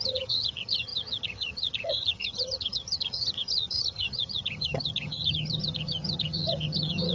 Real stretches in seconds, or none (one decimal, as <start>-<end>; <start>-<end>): none